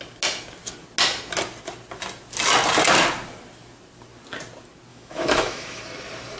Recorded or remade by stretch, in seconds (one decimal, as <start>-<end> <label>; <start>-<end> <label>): 0.0-4.9 recorded; 4.9-5.8 remade; 5.8-6.4 recorded